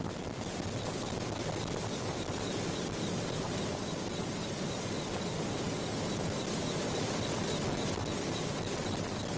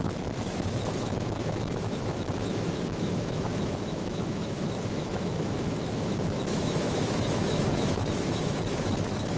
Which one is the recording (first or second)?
first